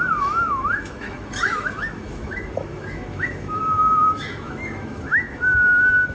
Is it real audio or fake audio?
fake